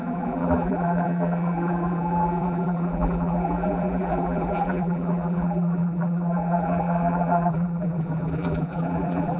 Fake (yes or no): yes